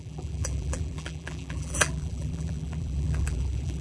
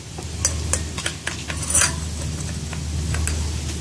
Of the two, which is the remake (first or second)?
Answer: first